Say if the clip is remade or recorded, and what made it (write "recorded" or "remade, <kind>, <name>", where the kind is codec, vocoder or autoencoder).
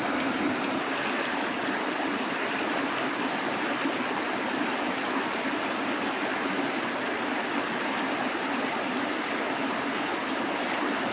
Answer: recorded